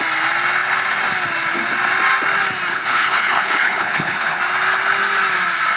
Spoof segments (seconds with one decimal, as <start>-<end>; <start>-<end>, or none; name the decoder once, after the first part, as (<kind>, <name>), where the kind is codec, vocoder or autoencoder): 2.7-4.4 (codec, HILCodec)